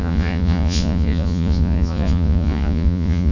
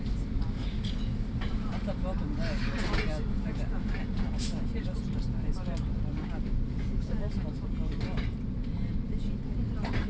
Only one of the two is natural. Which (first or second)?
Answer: second